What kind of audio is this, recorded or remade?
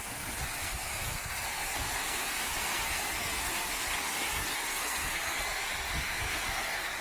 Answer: remade